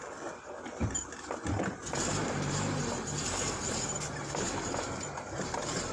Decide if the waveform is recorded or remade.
recorded